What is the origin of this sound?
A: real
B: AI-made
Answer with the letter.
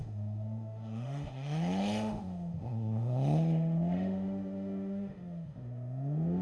B